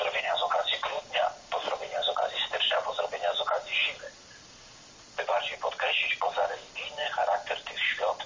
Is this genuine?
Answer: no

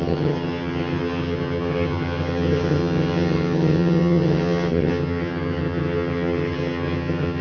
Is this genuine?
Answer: no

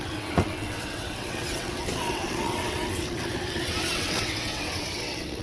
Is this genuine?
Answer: no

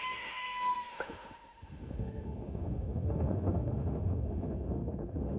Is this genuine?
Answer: no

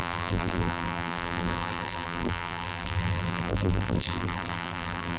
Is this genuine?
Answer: no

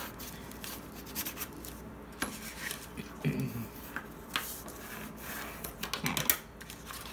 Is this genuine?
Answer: yes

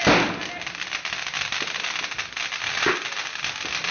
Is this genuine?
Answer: yes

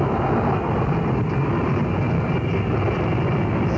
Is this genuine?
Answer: yes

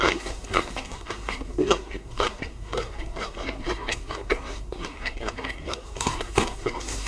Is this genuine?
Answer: no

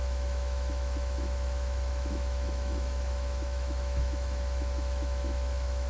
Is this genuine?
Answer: no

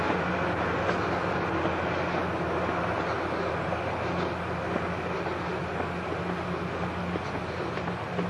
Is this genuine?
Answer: yes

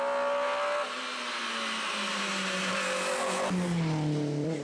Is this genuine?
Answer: yes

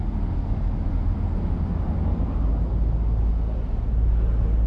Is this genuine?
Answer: yes